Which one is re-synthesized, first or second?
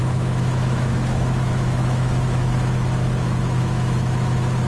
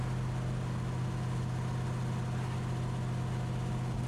first